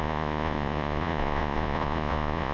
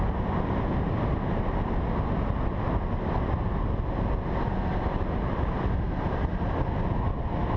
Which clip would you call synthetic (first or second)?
first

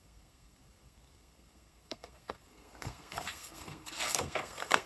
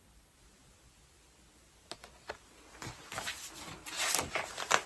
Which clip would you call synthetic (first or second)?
first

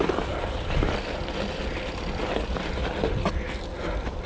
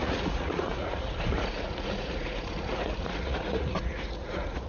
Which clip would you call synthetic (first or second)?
second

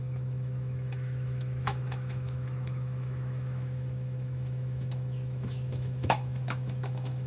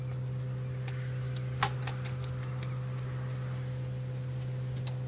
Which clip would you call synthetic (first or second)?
first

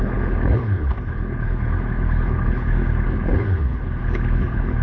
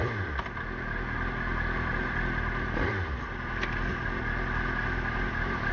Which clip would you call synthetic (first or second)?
first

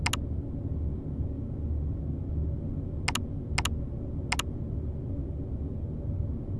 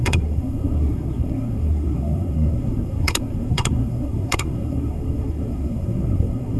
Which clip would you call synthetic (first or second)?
second